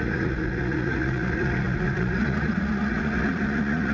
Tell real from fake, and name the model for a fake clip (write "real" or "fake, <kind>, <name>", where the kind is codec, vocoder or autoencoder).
fake, vocoder, Vocos